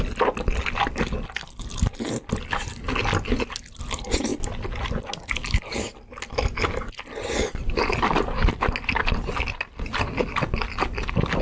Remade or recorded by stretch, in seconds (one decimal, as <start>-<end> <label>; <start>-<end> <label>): 0.0-11.4 recorded